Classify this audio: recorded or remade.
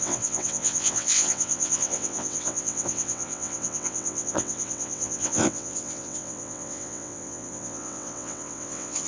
remade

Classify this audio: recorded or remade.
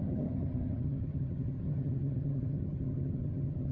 remade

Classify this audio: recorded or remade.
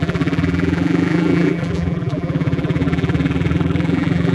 remade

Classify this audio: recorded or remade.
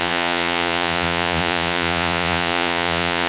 remade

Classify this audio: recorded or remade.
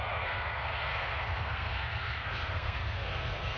remade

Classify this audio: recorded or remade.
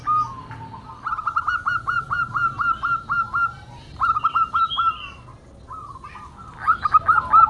recorded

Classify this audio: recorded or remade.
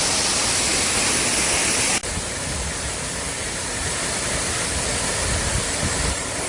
recorded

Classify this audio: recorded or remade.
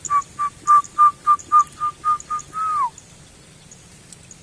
recorded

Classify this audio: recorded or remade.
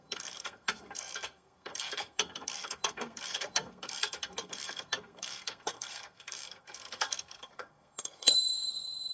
remade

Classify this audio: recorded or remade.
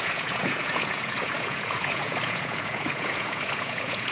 remade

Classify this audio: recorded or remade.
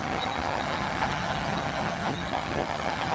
remade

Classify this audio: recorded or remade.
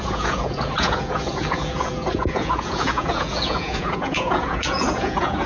remade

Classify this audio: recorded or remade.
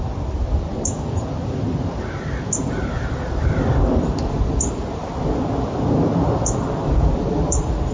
remade